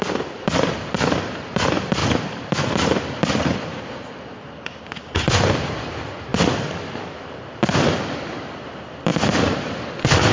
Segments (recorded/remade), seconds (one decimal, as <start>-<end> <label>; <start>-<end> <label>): 0.0-10.3 remade